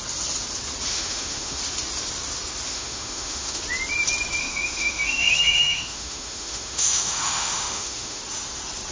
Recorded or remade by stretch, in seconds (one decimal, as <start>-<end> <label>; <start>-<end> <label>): 0.0-0.9 recorded; 0.9-1.6 remade; 1.6-2.7 recorded; 2.7-3.6 remade; 3.6-4.4 recorded; 4.4-8.2 remade; 8.2-8.9 recorded